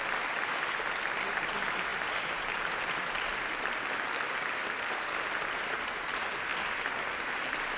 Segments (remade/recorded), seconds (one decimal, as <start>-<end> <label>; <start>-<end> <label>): 0.0-7.8 recorded